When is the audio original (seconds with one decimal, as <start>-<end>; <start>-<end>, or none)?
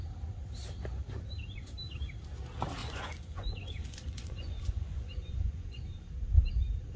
0.0-2.8; 6.0-7.0